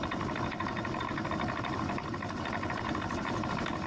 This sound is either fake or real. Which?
real